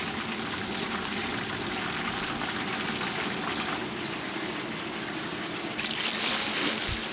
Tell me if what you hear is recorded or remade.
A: recorded